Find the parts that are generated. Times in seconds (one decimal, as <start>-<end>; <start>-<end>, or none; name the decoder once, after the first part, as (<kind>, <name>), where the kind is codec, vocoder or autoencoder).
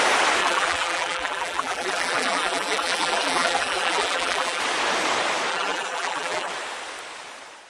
0.4-4.6 (vocoder, BigVGAN v2); 5.5-6.5